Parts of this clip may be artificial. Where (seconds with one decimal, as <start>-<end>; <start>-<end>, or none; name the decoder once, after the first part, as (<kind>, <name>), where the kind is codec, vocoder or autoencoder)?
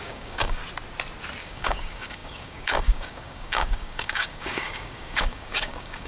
0.0-0.6 (codec, DAC); 1.4-6.1